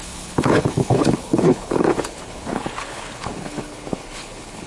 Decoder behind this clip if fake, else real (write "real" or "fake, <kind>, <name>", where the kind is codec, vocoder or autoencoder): fake, codec, HILCodec